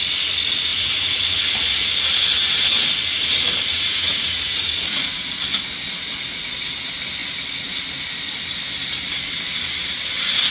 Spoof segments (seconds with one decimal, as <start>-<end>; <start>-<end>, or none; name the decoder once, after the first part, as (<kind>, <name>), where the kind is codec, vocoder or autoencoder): 0.7-1.4 (vocoder, Vocos); 3.7-5.2